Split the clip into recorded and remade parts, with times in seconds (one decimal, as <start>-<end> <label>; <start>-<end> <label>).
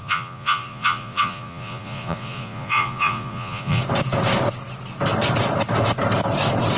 0.0-3.8 remade; 3.8-6.8 recorded